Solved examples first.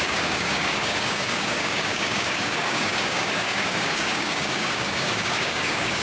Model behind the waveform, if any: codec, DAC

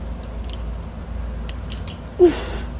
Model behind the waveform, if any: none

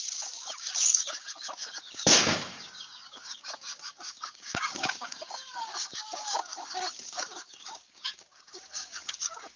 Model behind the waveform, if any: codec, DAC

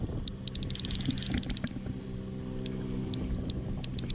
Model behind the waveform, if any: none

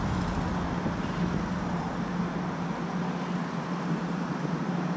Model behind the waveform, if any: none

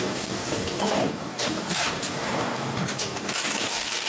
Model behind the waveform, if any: codec, DAC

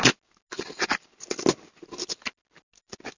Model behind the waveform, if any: none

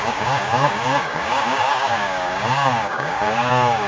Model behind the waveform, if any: codec, DAC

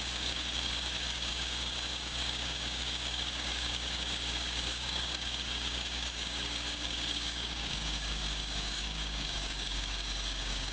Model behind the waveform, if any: codec, DAC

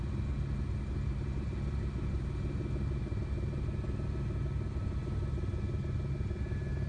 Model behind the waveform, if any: none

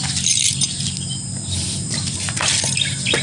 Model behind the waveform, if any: none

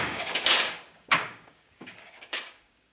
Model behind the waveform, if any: codec, DAC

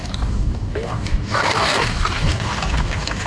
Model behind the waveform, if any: codec, DAC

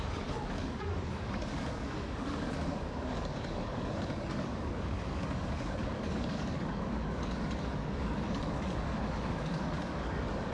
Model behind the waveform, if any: codec, DAC